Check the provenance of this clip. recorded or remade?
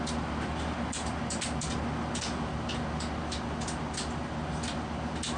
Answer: recorded